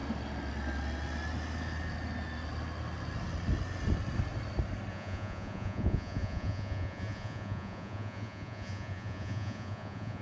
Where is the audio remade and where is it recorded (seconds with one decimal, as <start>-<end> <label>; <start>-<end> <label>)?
0.0-4.9 recorded; 4.9-10.2 remade